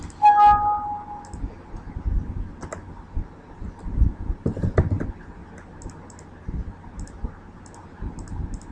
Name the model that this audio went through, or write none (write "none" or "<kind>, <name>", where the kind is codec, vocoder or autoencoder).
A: none